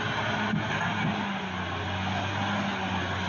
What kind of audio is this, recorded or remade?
recorded